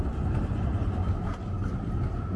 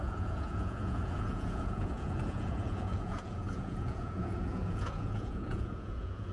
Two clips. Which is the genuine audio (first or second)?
first